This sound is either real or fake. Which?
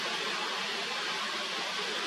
real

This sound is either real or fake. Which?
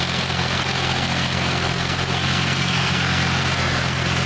fake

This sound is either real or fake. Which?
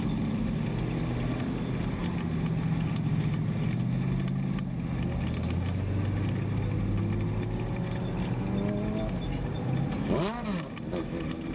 real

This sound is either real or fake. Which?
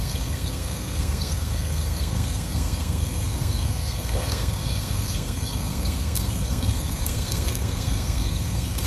fake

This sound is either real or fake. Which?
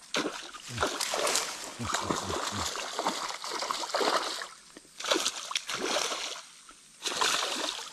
real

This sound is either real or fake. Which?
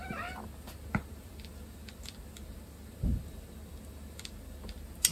real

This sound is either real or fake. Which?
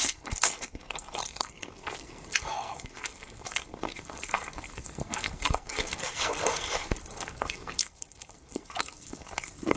fake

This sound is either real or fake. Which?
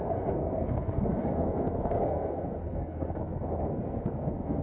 fake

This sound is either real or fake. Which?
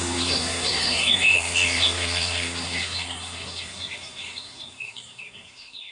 fake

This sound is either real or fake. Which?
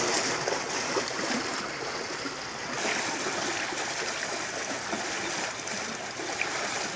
real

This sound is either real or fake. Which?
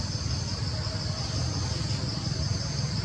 real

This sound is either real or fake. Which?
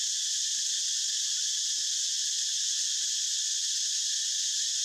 real